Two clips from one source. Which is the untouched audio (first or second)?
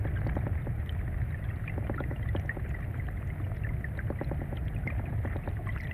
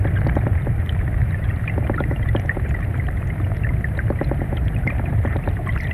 first